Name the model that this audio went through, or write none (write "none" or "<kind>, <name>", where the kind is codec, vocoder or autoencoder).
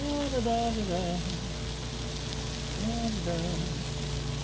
none